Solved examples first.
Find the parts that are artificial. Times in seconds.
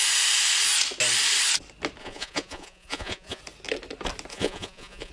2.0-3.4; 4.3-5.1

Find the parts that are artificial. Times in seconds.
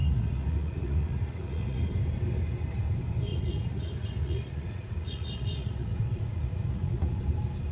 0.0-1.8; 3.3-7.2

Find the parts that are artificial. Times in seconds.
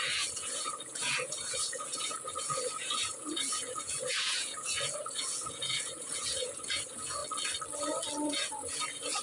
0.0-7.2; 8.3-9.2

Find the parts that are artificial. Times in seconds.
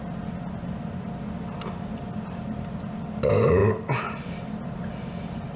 none